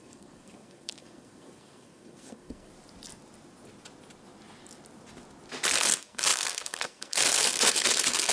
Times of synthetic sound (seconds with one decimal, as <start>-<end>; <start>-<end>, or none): 0.0-2.7; 5.8-8.3